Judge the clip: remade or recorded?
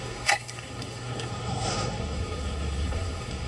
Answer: remade